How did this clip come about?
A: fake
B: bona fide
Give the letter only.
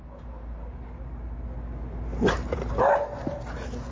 B